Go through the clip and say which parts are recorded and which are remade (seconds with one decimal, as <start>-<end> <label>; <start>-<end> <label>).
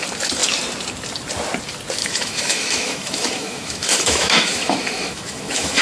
0.0-2.0 recorded; 2.0-5.8 remade